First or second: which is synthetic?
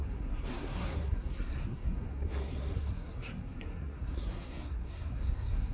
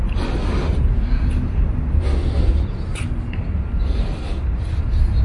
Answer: first